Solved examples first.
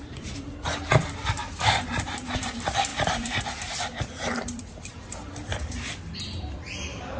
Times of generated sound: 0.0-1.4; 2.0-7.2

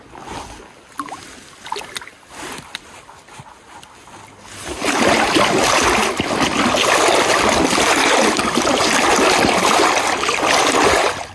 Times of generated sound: none

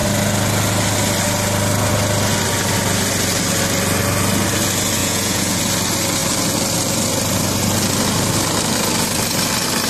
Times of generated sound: 5.0-5.6

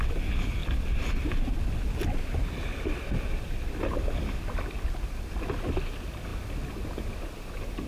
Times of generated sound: 0.6-5.3

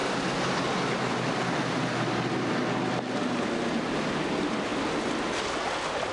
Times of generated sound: none

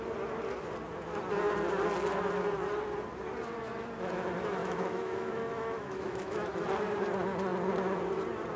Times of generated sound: 4.6-6.6

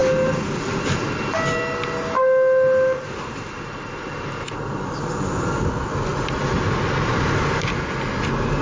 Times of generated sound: none